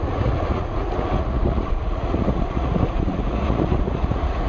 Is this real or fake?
fake